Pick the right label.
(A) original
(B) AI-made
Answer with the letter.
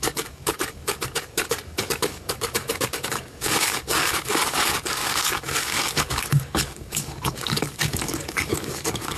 B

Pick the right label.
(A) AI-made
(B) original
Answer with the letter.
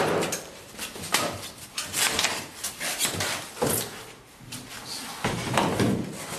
B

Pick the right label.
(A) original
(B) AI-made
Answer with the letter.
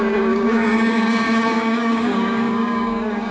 B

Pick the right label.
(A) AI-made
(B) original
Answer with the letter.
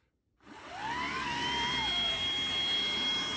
B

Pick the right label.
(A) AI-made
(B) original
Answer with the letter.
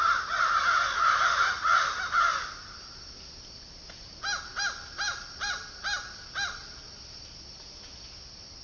B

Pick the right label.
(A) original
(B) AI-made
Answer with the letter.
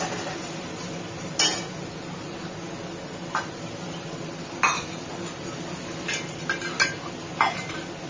A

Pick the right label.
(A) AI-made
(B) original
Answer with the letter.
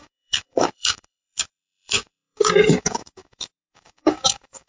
A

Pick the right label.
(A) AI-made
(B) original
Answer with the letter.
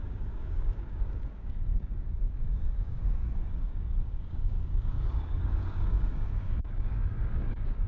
A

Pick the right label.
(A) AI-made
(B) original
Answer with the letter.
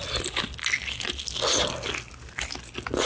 B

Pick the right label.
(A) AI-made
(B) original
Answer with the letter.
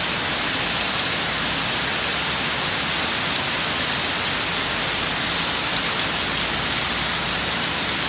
B